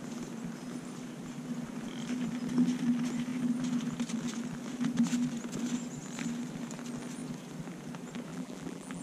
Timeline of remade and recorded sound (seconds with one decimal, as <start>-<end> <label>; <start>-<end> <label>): 0.0-8.3 recorded; 8.3-9.0 remade

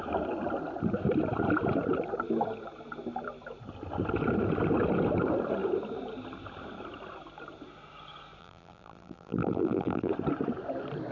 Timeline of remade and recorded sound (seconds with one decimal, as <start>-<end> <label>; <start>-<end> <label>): 0.0-8.4 recorded; 8.4-10.1 remade; 10.1-11.1 recorded

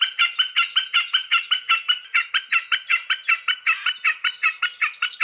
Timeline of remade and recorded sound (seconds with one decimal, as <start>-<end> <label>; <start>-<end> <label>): 0.0-5.2 recorded